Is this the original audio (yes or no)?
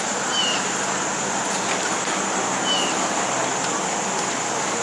yes